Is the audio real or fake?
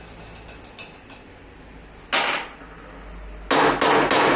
real